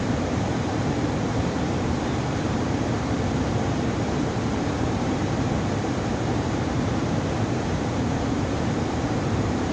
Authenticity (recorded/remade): remade